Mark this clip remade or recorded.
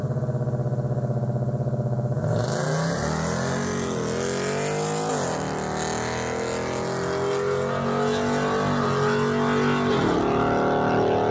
recorded